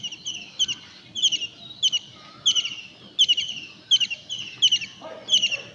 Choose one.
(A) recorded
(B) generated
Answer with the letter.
A